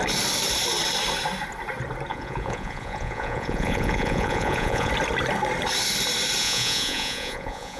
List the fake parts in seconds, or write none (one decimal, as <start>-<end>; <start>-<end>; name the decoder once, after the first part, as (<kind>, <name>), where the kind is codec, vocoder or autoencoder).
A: 2.1-4.9 (vocoder, Vocos); 6.4-7.8